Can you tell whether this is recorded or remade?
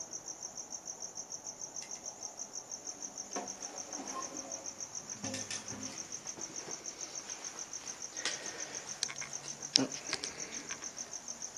recorded